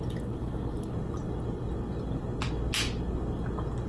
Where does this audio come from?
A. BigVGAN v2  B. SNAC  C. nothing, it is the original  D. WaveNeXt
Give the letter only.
C